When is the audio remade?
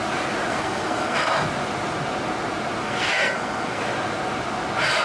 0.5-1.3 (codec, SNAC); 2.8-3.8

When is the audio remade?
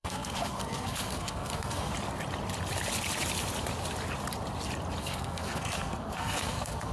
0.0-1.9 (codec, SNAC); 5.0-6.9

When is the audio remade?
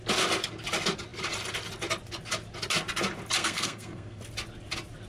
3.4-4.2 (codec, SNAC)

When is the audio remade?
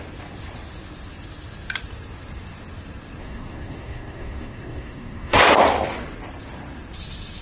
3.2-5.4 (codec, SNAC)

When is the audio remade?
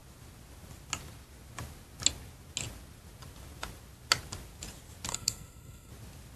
5.1-5.9 (codec, SNAC)